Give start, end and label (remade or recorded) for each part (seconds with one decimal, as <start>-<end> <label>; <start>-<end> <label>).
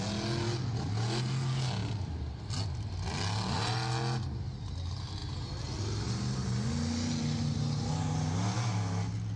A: 0.0-9.4 recorded